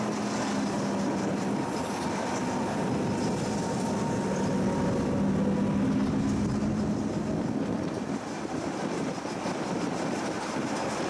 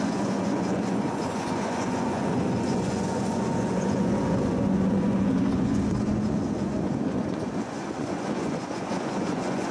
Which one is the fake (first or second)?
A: second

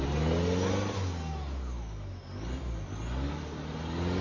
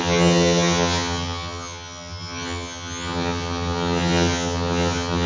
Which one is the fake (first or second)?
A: second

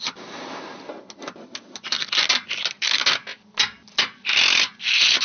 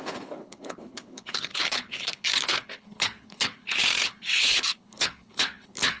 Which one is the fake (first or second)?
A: second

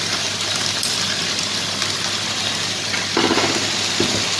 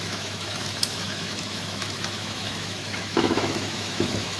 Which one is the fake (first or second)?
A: second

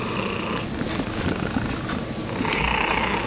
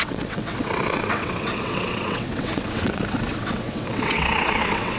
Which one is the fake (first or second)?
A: second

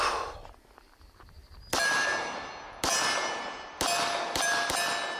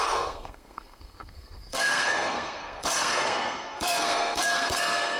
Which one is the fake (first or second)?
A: second